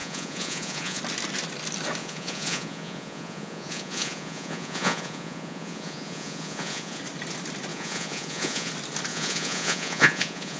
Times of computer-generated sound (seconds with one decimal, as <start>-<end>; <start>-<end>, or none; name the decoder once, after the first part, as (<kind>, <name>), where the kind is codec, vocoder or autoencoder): 0.0-1.0 (vocoder, Vocos); 2.0-7.0; 7.7-8.7; 9.1-10.6